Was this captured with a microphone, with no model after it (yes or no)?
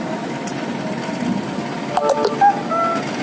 yes